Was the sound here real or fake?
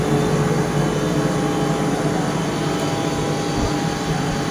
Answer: real